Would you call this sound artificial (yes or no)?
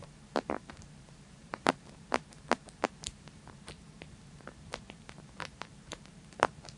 yes